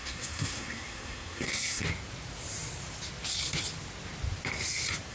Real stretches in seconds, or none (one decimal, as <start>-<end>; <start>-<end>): 1.8-5.1